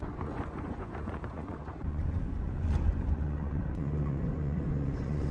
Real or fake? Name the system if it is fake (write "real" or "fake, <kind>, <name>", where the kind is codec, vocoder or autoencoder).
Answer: fake, vocoder, Vocos